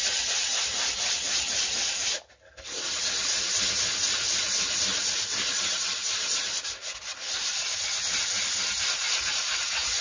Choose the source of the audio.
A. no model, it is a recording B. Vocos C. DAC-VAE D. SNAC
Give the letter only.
A